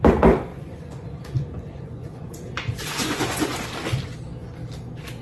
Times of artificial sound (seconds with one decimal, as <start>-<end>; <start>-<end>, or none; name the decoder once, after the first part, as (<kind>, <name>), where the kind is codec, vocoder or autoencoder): 0.5-3.6 (vocoder, Vocos)